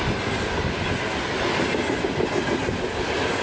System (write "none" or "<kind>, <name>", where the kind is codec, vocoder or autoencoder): none